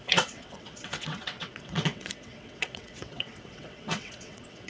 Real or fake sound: fake